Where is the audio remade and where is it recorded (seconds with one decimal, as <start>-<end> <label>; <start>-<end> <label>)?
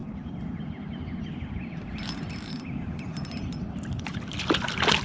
0.0-5.0 recorded